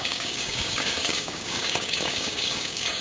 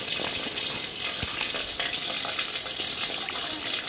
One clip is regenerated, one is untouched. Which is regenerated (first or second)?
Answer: first